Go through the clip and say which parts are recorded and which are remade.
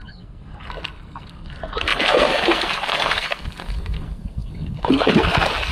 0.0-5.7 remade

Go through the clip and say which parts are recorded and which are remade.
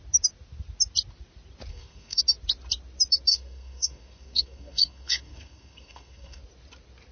0.0-1.7 recorded; 1.7-2.2 remade; 2.2-3.3 recorded; 3.3-6.4 remade; 6.4-7.1 recorded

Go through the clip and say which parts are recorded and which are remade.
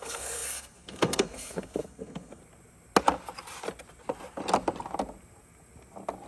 0.0-2.4 remade; 2.4-6.3 recorded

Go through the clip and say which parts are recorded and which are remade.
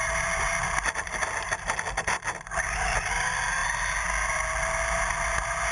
0.0-5.7 recorded